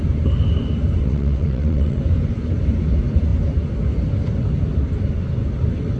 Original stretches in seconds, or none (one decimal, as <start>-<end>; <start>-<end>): 0.0-1.0; 2.0-6.0